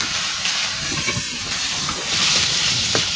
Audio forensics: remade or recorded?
remade